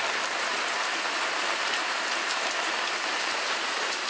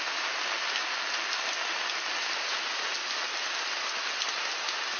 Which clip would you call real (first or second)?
second